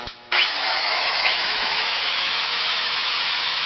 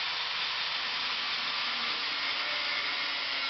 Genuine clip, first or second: second